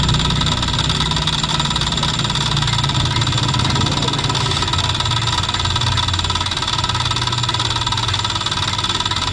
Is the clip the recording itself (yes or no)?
yes